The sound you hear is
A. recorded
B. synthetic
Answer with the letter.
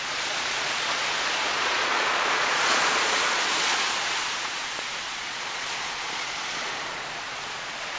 B